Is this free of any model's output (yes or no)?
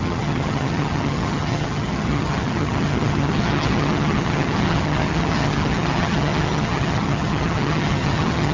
no